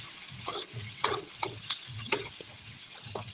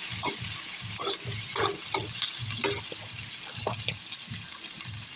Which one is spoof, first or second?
first